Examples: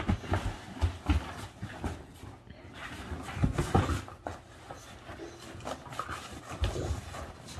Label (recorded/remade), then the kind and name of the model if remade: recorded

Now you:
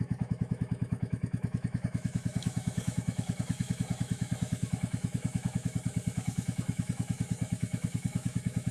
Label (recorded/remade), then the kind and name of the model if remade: remade, autoencoder, DAC-VAE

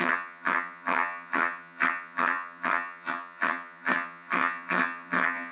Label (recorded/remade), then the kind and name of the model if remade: remade, vocoder, HiFi-GAN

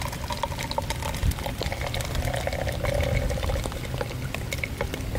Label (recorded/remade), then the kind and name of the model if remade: recorded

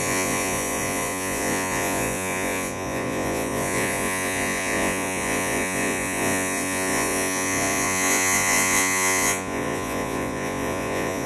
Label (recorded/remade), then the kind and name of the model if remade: remade, vocoder, Vocos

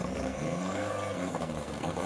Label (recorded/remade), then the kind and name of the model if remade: remade, codec, SNAC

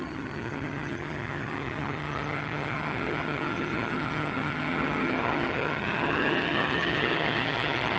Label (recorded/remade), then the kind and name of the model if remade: remade, vocoder, HiFi-GAN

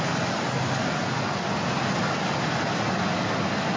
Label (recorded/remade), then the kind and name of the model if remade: recorded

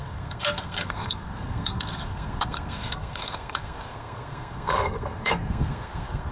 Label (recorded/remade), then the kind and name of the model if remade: remade, codec, SNAC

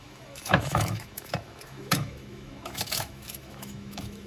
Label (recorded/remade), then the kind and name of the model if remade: remade, autoencoder, DAC-VAE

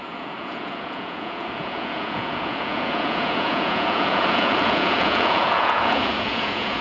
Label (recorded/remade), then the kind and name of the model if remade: remade, vocoder, Vocos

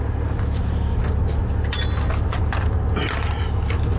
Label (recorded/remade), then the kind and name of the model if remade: recorded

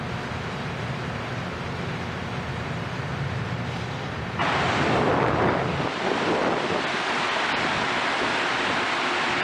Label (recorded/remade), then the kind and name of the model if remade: remade, vocoder, BigVGAN v2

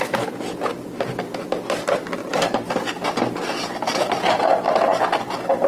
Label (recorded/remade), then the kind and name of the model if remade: recorded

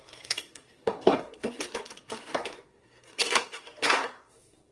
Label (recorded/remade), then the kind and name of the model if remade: remade, codec, SNAC